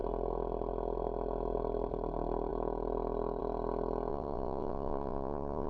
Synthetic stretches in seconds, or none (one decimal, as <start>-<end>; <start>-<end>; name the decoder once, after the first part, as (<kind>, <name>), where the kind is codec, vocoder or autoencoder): 4.1-5.7 (vocoder, WaveNeXt)